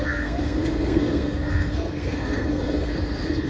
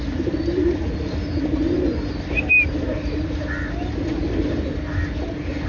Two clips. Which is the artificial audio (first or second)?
first